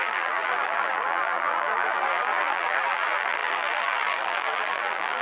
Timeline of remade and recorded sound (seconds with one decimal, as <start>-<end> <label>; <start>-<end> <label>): 0.0-5.2 remade